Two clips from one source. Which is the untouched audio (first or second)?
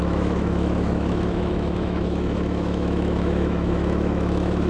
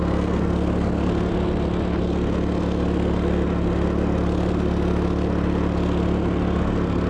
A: second